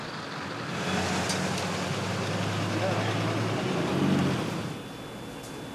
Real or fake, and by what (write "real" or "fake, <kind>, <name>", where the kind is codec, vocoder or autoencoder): real